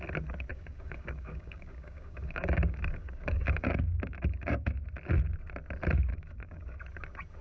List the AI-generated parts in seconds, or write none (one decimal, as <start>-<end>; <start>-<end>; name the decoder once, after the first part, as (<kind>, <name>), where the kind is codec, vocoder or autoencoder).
0.5-4.8 (codec, DAC); 6.1-6.8